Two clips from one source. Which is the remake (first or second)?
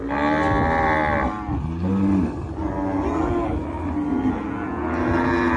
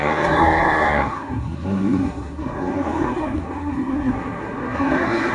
second